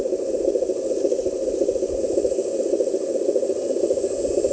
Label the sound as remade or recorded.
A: recorded